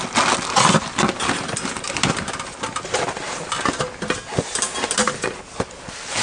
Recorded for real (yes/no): yes